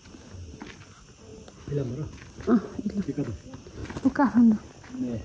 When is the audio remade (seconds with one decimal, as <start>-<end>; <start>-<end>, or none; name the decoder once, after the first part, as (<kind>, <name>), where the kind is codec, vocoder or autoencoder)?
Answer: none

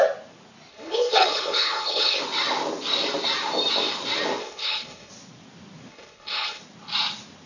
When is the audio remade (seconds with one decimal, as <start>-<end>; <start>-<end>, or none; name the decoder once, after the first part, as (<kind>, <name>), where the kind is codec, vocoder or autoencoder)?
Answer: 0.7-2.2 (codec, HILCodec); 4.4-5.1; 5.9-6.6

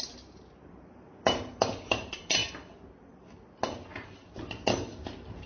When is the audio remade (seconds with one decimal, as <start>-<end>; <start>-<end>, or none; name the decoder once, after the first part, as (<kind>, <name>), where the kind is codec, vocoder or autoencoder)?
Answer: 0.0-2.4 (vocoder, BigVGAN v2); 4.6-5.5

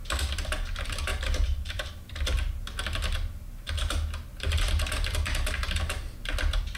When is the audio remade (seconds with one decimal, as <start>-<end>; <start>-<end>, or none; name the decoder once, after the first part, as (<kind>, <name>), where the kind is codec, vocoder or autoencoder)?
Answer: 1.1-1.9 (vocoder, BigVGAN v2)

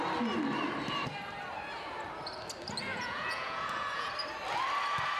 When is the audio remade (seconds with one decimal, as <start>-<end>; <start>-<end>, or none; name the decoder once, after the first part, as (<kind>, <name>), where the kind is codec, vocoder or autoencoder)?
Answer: 2.9-4.1 (vocoder, Vocos)

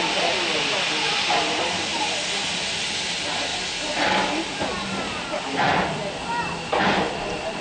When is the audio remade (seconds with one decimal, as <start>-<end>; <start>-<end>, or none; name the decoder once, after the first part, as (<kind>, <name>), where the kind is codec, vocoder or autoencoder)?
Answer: none